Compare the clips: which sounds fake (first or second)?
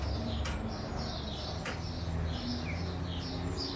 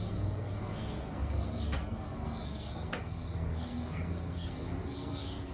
second